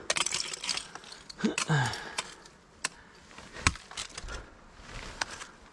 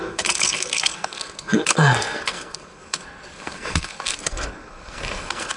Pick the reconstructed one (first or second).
second